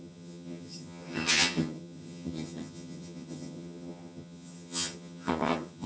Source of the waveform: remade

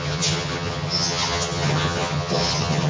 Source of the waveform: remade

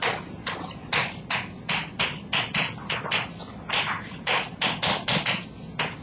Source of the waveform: recorded